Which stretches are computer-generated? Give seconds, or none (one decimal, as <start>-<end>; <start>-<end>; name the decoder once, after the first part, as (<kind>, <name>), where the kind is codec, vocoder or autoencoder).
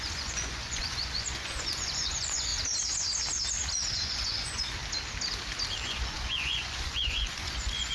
0.0-2.5 (vocoder, Vocos); 3.9-4.8; 5.8-7.9